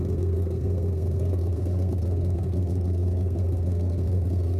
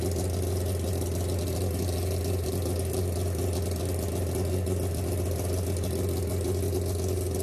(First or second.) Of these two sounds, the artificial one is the first